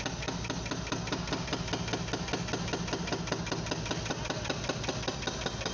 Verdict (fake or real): real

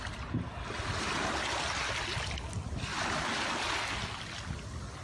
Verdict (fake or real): real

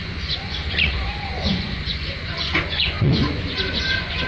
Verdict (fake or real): fake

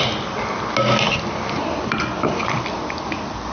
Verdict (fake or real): real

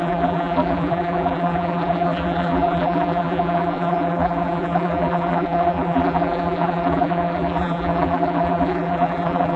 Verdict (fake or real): fake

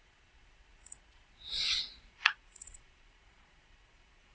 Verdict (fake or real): fake